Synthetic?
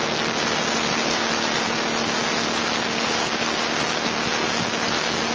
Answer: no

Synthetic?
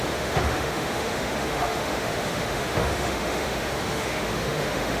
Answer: yes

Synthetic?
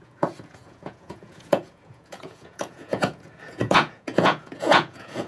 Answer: yes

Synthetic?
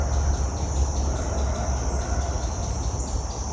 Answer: no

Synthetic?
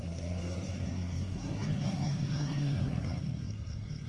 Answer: yes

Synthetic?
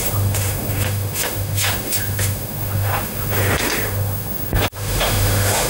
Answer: yes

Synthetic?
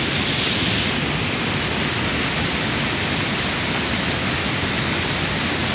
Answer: no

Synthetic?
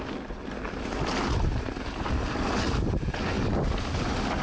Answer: no